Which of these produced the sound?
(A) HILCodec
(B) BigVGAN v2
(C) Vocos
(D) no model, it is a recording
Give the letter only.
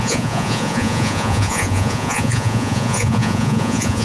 C